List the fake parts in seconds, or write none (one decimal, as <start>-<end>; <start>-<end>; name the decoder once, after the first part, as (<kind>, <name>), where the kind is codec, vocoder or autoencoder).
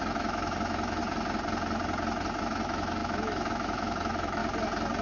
0.0-1.0 (autoencoder, DAC-VAE); 2.4-4.4